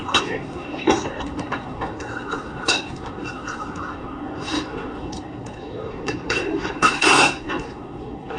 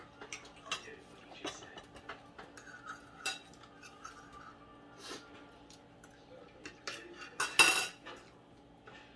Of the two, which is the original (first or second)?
second